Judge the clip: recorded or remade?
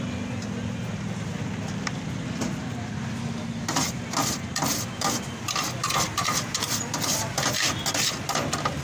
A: recorded